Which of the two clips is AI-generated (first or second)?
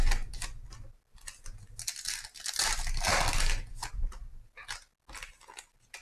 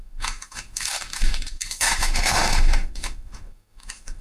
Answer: second